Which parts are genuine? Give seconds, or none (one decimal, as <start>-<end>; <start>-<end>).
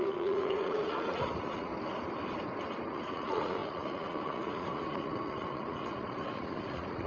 1.7-2.9